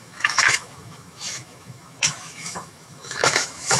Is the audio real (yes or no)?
no